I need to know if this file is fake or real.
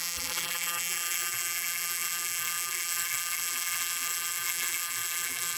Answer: fake